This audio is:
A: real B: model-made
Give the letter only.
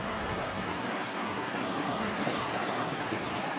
B